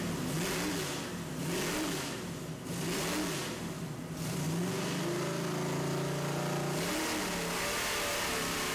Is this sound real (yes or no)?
yes